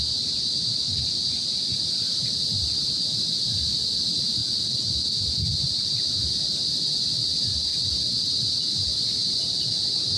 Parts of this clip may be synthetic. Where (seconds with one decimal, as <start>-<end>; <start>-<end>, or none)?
0.0-4.4; 5.8-7.7; 8.2-9.2